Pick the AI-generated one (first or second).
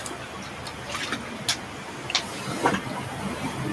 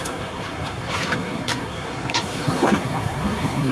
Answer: second